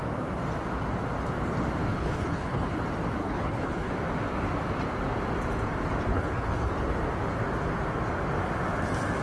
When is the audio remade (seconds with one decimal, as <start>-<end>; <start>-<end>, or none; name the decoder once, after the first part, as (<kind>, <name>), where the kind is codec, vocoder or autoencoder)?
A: 1.9-2.7 (codec, HILCodec); 3.2-3.9; 6.1-6.7